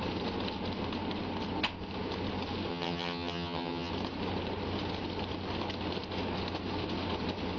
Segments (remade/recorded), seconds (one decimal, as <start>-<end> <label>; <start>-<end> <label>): 0.0-2.7 recorded; 2.7-3.9 remade; 3.9-7.6 recorded